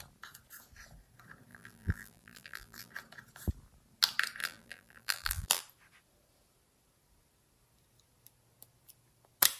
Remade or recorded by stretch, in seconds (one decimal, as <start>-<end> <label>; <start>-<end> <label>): 0.0-1.5 recorded; 1.5-2.9 remade; 2.9-4.4 recorded; 4.4-5.6 remade; 5.6-9.6 recorded